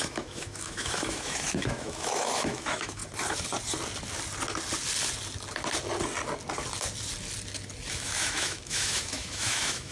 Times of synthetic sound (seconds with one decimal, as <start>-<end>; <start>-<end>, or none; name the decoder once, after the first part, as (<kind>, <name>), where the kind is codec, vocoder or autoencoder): 0.0-3.0 (autoencoder, DAC-VAE); 7.9-9.9